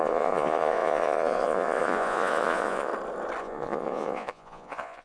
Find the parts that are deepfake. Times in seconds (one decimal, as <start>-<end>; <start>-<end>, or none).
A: 0.0-2.9; 3.4-5.0